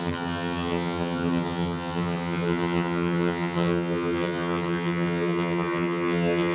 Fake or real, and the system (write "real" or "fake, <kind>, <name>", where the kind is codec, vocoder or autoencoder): fake, vocoder, HiFi-GAN